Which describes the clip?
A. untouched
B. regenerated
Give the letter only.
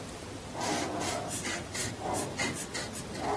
A